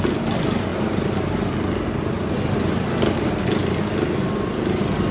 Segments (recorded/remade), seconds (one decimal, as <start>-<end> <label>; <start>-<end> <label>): 0.0-5.1 recorded